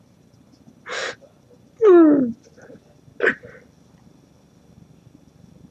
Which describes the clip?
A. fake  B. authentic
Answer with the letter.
B